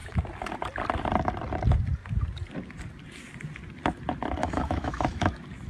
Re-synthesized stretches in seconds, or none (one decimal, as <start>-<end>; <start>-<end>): 4.4-5.3